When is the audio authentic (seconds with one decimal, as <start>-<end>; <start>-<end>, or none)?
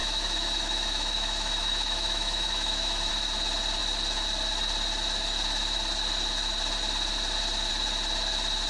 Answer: 3.1-8.7